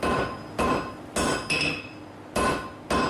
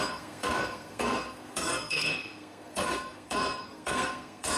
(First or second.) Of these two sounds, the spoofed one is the second